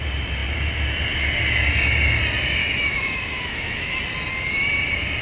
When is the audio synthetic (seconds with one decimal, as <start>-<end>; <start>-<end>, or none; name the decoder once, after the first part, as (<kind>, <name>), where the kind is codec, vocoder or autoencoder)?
2.6-3.9 (autoencoder, DAC-VAE)